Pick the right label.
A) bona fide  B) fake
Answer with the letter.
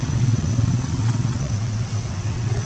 B